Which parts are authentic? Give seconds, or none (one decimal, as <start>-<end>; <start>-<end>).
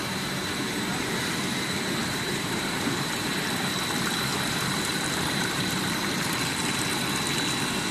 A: 0.0-2.0; 3.7-4.3; 6.3-7.9